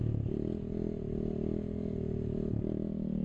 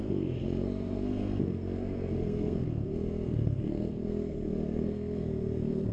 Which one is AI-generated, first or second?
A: second